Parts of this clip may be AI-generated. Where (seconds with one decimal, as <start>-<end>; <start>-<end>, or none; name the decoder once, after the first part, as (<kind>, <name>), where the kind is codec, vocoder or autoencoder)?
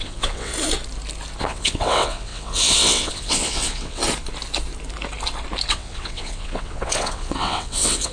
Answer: 0.0-0.5 (vocoder, WaveNeXt); 1.4-4.0; 5.7-8.1